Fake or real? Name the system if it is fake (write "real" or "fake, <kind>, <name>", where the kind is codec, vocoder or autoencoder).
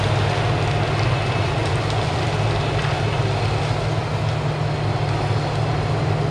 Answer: real